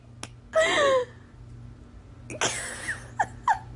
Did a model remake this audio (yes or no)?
no